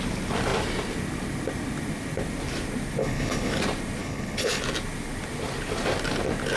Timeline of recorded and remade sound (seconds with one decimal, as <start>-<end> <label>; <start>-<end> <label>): 0.0-3.0 recorded; 3.0-3.6 remade; 3.6-4.0 recorded; 4.0-4.6 remade; 4.6-6.6 recorded